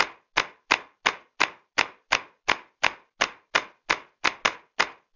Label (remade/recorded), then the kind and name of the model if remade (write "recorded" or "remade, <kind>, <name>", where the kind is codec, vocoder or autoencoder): recorded